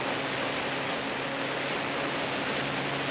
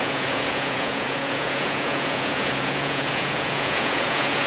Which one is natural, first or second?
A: first